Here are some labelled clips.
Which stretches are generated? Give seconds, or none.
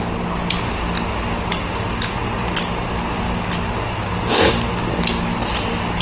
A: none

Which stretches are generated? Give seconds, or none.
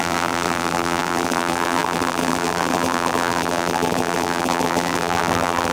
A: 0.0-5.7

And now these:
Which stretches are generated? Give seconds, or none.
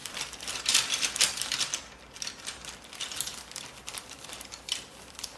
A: 0.0-3.3; 3.9-5.4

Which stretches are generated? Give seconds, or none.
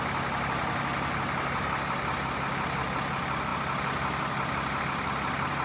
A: none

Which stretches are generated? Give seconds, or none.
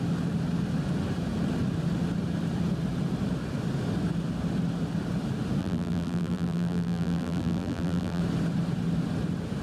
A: 5.6-8.2